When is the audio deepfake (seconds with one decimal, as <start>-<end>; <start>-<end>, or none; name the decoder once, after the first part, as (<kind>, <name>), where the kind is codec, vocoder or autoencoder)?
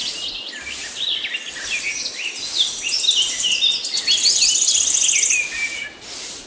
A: none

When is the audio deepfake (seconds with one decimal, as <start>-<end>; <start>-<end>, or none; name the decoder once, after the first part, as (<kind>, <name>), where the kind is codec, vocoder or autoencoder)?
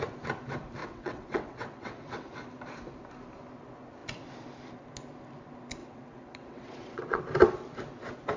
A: 0.8-2.3 (vocoder, WaveNeXt); 5.8-7.2